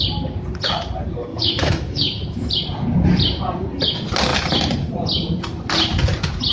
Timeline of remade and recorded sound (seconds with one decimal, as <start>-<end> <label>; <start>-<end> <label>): 0.0-1.3 recorded; 1.3-2.5 remade; 2.5-6.5 recorded